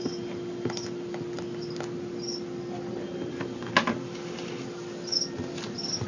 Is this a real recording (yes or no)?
yes